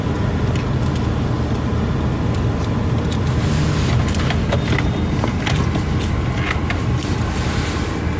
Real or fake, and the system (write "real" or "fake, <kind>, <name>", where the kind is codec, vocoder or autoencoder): real